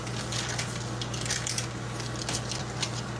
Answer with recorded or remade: recorded